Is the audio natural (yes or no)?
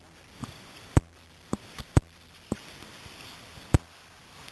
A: no